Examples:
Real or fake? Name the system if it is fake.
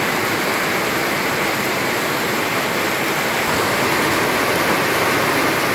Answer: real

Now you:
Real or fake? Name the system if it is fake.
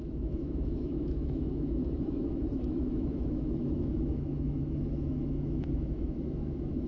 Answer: fake, autoencoder, DAC-VAE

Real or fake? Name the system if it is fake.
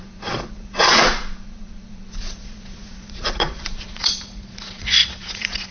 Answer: fake, vocoder, Vocos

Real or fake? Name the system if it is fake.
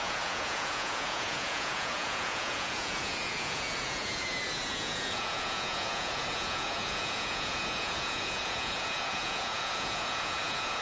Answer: fake, vocoder, Vocos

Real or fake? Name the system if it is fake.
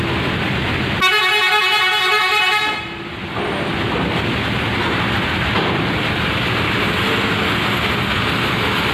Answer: real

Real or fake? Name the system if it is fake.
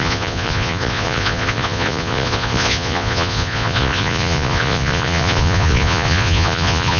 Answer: fake, vocoder, Vocos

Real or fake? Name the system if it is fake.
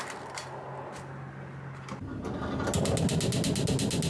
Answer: real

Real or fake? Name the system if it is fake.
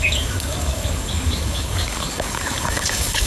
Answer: fake, codec, DAC